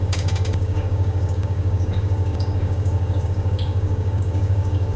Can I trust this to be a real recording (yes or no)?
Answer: no